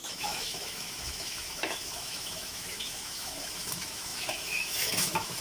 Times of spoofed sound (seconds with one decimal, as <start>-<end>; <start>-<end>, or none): 0.0-5.4